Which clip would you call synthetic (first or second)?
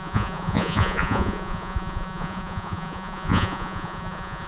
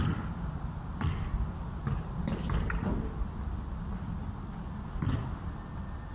first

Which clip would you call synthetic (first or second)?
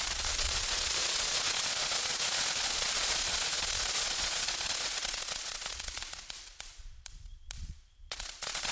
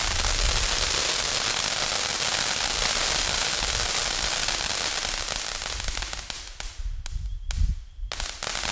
first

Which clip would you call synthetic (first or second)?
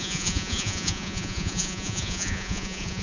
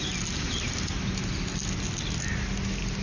first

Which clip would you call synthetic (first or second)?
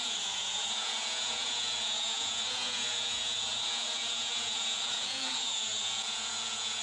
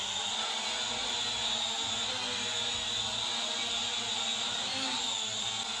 first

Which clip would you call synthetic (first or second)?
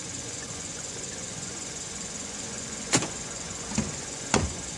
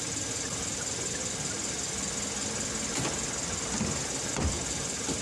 first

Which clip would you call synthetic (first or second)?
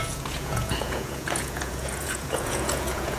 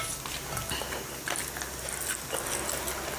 first